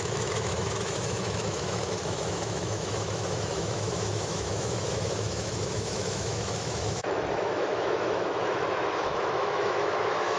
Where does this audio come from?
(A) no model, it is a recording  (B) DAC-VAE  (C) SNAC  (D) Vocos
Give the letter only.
B